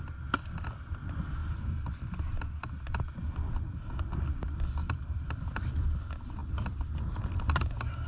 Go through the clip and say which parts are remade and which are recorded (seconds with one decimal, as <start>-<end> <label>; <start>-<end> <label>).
0.0-4.8 recorded; 4.8-5.6 remade; 5.6-8.1 recorded

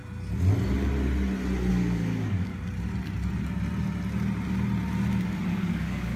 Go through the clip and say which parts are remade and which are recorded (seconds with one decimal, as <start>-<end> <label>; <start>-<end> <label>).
0.0-1.7 recorded; 1.7-2.5 remade; 2.5-5.5 recorded; 5.5-6.2 remade